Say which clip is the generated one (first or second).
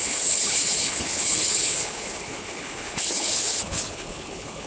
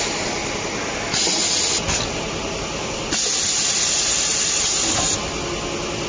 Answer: first